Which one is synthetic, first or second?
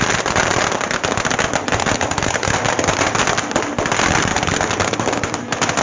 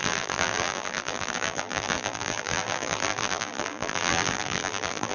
second